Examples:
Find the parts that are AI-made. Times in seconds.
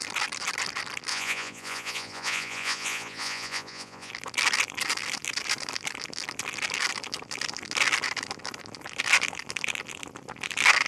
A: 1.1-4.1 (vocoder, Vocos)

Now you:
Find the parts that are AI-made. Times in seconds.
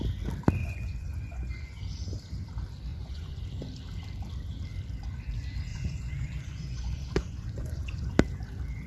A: 0.6-1.8 (vocoder, Vocos); 2.9-3.4; 5.7-8.1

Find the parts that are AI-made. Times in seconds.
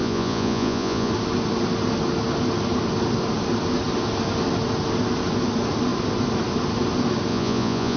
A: 0.0-1.1 (vocoder, Vocos); 7.3-8.0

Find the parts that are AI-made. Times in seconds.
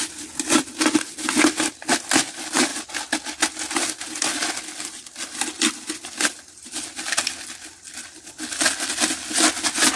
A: none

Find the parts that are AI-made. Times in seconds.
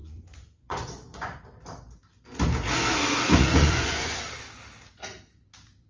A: 0.0-1.4 (vocoder, Vocos); 3.3-4.2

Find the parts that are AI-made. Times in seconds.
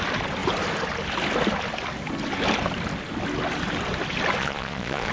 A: 4.4-5.1 (vocoder, Vocos)